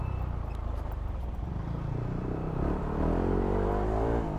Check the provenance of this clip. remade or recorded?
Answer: recorded